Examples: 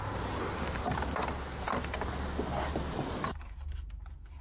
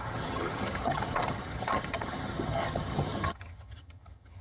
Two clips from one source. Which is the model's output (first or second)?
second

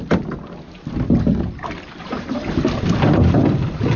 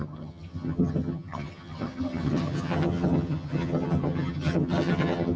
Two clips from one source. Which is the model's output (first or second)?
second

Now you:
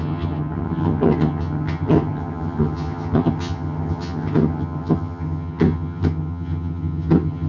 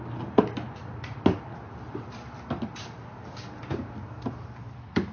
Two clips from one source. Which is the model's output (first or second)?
first